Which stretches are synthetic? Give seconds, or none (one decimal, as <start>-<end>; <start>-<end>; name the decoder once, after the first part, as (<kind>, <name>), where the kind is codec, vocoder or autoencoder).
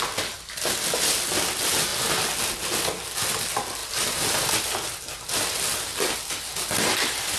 none